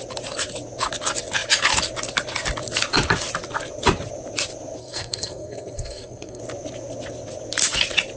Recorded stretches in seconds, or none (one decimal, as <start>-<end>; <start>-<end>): 0.0-4.8; 6.4-8.2